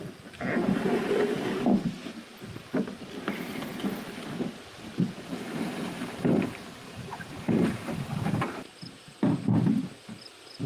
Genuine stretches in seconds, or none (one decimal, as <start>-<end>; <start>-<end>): 0.0-5.3; 8.7-10.7

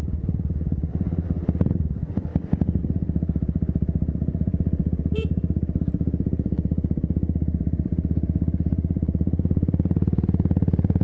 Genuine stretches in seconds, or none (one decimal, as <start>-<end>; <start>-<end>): 2.3-2.8

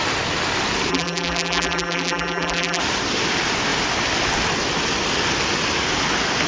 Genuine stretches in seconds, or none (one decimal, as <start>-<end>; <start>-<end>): 0.0-0.9; 2.8-6.5

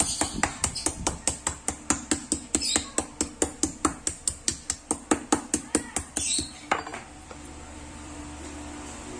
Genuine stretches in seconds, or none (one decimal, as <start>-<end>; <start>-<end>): 0.0-6.9; 8.2-9.2

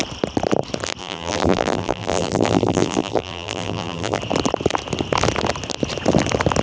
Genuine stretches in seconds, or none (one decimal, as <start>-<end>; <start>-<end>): 0.0-1.0; 4.2-6.6

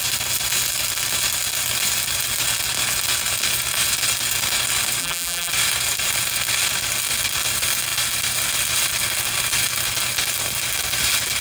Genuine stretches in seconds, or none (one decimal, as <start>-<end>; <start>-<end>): 0.0-5.0; 5.5-11.4

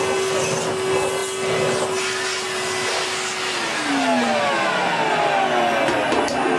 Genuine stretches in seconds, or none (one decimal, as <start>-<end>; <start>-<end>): 0.0-6.6

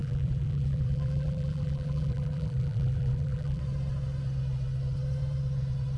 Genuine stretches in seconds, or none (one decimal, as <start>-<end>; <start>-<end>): 3.6-6.0